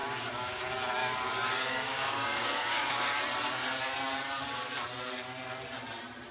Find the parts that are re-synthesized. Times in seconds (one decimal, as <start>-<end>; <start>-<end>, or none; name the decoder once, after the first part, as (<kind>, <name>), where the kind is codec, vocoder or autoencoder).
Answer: 0.0-0.6 (codec, DAC); 1.0-3.2